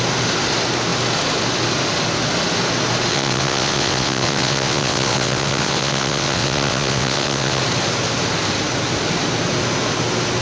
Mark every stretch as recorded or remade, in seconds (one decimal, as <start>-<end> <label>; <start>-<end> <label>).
0.0-3.1 recorded; 3.1-7.6 remade; 7.6-10.4 recorded